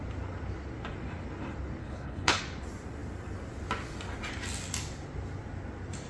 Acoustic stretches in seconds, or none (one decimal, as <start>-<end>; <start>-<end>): 0.0-1.8; 2.4-6.1